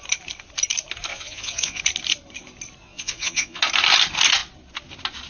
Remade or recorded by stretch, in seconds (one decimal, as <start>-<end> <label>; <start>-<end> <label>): 0.0-1.1 recorded; 1.1-1.8 remade; 1.8-2.8 recorded; 2.8-3.6 remade; 3.6-5.3 recorded